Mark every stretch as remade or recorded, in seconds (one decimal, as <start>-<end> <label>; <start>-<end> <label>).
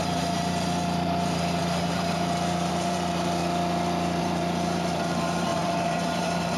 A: 0.0-3.4 remade; 3.4-4.2 recorded; 4.2-6.6 remade